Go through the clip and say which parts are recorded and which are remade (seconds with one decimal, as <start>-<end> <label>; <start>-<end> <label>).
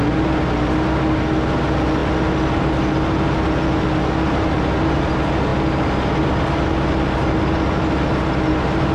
0.0-8.9 recorded